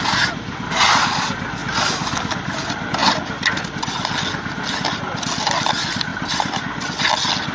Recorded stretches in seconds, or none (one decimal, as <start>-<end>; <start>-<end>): 0.0-1.6; 2.6-6.1; 6.6-7.5